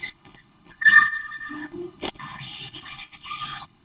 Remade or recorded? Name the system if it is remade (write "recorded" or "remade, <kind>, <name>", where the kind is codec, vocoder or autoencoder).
remade, codec, HILCodec